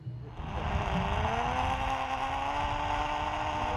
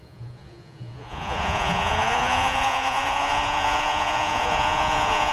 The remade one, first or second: second